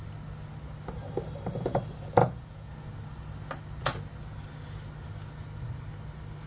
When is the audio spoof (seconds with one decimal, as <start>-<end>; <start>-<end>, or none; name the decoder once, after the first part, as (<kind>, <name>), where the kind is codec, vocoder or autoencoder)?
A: 2.2-2.7 (vocoder, Vocos)